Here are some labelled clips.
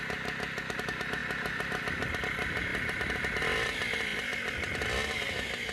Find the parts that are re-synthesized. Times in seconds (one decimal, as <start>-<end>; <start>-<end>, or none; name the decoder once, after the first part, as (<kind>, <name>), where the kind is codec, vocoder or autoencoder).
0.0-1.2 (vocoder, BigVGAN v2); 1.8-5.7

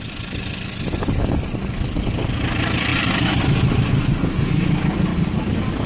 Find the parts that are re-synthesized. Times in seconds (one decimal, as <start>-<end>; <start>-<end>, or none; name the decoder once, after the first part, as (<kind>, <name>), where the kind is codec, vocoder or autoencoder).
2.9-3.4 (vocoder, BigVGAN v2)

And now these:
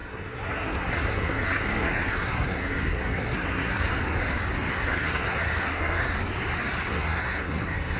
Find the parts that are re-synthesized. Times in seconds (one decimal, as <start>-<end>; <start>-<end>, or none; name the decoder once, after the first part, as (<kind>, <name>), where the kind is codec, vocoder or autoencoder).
0.0-3.9 (codec, SNAC); 4.7-6.0; 6.9-8.0

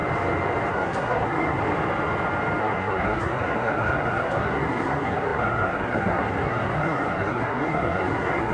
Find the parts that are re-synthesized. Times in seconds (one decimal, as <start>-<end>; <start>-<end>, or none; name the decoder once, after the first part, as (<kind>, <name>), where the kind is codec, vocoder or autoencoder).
0.7-1.6 (codec, SNAC); 2.6-8.5

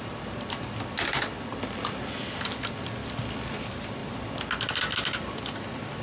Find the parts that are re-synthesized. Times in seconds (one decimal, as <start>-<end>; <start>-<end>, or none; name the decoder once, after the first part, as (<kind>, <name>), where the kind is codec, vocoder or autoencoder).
none